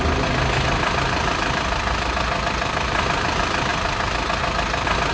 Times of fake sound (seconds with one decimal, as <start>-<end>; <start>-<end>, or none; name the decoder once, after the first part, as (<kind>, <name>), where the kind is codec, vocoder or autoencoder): none